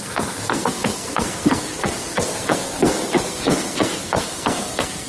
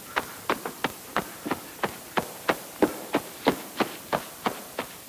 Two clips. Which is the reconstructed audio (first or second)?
first